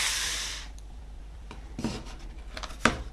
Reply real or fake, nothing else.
fake